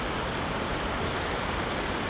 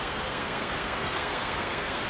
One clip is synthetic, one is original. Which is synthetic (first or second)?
second